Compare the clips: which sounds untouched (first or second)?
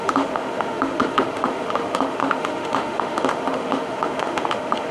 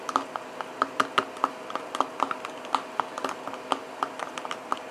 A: second